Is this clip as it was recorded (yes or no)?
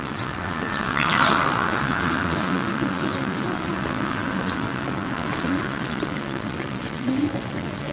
no